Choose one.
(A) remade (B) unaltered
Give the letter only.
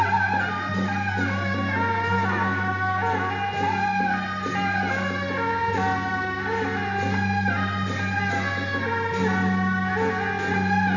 B